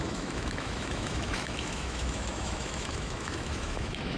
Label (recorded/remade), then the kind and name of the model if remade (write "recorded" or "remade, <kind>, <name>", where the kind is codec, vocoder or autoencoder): remade, autoencoder, DAC-VAE